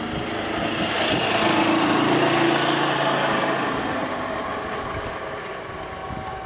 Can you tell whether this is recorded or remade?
recorded